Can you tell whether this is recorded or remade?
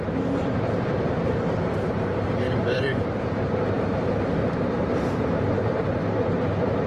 remade